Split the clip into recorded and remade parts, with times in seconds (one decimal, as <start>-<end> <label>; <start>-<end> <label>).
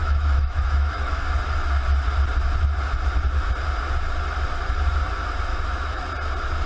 0.0-1.2 remade; 1.2-5.5 recorded; 5.5-6.0 remade; 6.0-6.7 recorded